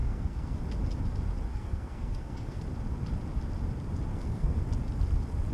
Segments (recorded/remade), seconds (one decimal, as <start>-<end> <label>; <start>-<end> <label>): 0.0-0.6 remade; 0.6-1.5 recorded; 1.5-2.6 remade; 2.6-4.1 recorded; 4.1-4.6 remade; 4.6-5.5 recorded